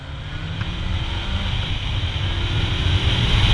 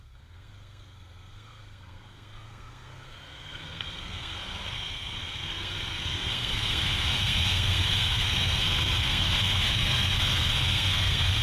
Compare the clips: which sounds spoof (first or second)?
second